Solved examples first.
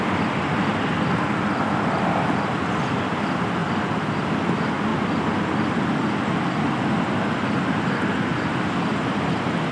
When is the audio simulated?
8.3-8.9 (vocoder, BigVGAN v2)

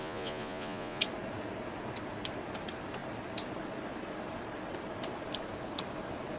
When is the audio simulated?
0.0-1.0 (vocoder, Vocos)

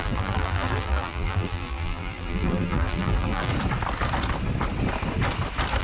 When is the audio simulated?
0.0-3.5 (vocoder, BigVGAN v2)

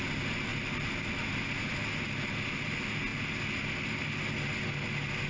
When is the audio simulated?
none

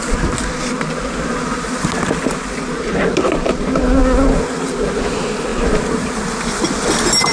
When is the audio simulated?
none